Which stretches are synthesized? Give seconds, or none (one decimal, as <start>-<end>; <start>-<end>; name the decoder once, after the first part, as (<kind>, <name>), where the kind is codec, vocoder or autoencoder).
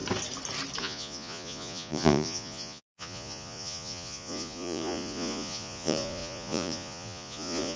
0.8-7.8 (vocoder, Vocos)